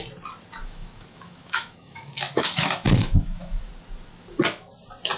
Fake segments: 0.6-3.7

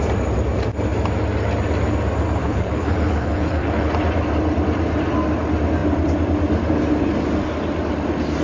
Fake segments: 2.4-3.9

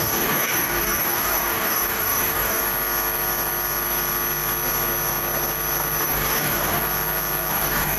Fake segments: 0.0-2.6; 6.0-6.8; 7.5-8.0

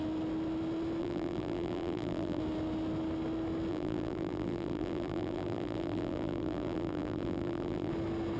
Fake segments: 1.0-2.4; 3.7-7.9